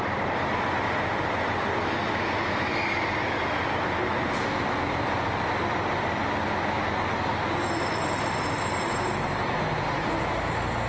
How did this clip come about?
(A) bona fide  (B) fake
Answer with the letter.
A